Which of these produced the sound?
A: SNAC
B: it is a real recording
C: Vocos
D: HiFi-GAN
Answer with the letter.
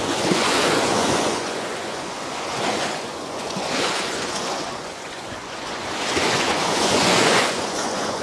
C